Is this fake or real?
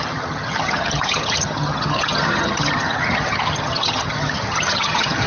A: fake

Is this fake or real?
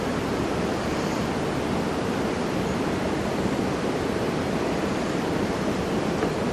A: fake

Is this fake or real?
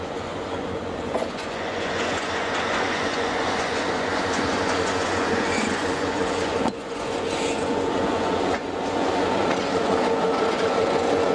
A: fake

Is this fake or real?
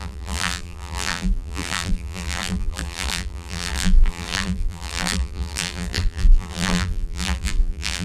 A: fake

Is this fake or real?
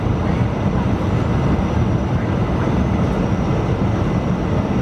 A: real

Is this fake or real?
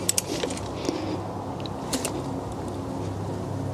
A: real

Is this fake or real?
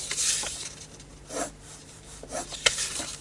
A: fake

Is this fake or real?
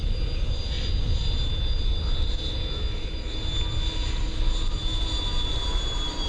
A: real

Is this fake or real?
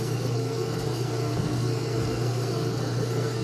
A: fake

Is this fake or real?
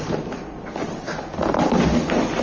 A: real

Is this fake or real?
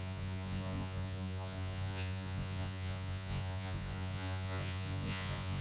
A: fake